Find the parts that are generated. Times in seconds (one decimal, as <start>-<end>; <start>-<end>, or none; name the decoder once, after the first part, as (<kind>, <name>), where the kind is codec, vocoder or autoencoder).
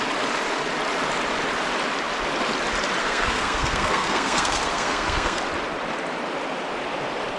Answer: 3.0-5.4 (codec, SNAC)